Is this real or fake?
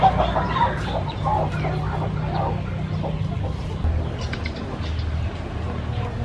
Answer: real